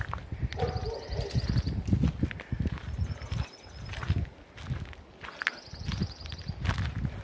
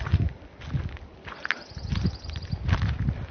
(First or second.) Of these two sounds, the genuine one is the first